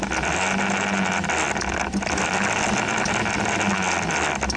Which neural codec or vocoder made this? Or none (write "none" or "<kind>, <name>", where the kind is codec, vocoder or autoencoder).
none